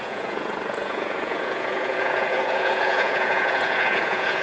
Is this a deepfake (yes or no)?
yes